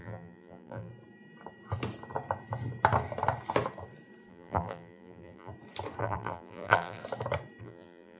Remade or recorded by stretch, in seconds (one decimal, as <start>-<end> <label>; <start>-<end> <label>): 0.0-0.9 remade; 0.9-4.3 recorded; 4.3-5.5 remade; 5.5-6.0 recorded; 6.0-7.0 remade; 7.0-7.6 recorded; 7.6-8.2 remade